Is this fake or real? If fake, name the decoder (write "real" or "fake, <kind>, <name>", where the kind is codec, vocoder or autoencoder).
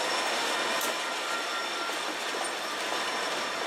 fake, vocoder, BigVGAN v2